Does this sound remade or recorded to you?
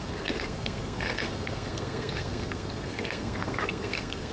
remade